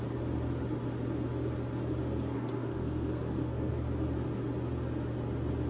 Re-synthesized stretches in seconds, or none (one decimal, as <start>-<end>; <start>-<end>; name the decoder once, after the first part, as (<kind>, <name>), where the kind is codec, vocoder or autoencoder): 2.0-3.7 (codec, SNAC)